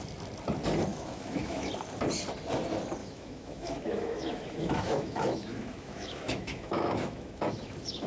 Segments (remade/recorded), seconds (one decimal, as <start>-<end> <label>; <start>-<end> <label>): 0.0-0.9 recorded; 0.9-1.7 remade; 1.7-3.0 recorded; 3.0-8.1 remade